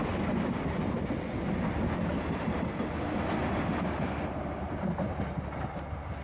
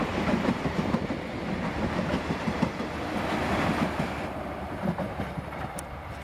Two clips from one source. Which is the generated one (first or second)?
second